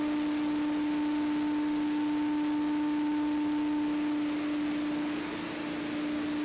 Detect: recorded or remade recorded